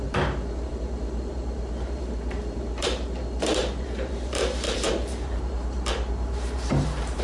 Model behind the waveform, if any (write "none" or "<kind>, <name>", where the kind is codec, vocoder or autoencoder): vocoder, BigVGAN v2